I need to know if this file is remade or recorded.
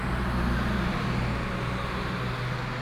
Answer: recorded